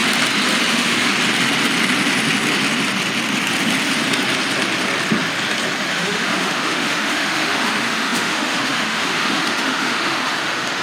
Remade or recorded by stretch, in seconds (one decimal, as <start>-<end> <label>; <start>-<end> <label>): 0.0-0.7 recorded; 0.7-1.1 remade; 1.1-5.9 recorded; 5.9-10.8 remade